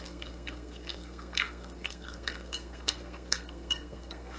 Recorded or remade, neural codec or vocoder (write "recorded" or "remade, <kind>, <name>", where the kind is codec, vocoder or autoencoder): remade, codec, SNAC